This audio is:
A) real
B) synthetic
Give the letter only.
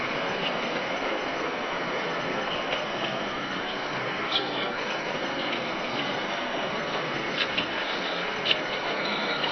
B